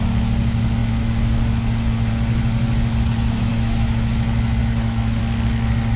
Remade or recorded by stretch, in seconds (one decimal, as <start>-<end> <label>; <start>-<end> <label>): 0.0-3.5 recorded; 3.5-4.1 remade; 4.1-4.6 recorded; 4.6-5.2 remade; 5.2-6.0 recorded